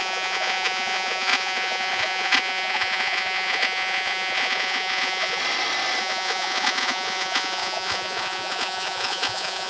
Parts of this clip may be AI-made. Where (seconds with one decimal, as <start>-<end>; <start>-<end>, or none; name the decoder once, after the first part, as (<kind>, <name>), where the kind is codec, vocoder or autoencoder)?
0.0-5.4 (vocoder, Vocos); 6.0-9.7